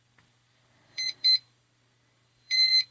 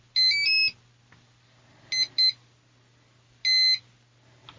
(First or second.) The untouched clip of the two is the second